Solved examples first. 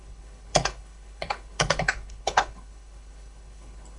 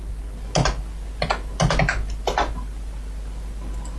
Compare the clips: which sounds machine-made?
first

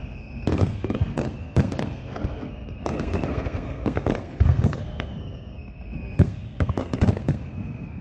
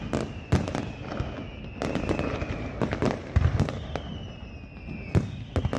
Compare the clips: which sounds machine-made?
first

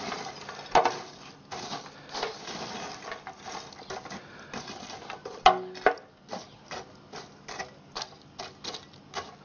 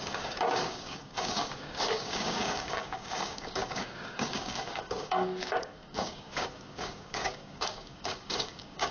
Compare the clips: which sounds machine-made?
second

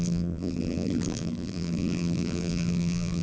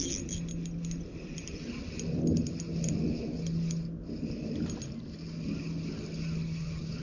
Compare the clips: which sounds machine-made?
first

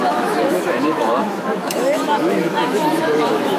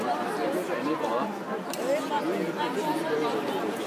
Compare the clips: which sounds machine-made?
first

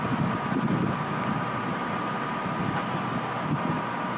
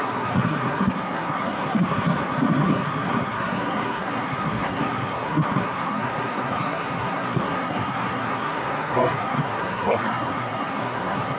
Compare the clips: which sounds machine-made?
second